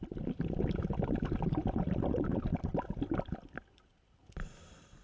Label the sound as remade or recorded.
recorded